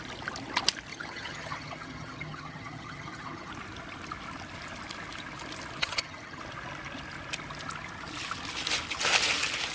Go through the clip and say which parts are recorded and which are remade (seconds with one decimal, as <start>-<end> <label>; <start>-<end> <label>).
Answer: 0.0-0.9 recorded; 0.9-3.5 remade; 3.5-5.8 recorded; 5.8-6.4 remade; 6.4-9.7 recorded